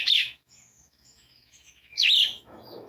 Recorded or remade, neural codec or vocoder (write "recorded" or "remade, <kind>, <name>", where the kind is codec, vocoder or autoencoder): remade, autoencoder, DAC-VAE